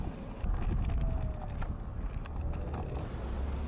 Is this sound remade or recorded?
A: recorded